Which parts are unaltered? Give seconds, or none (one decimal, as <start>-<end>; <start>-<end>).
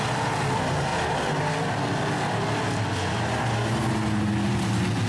0.0-5.1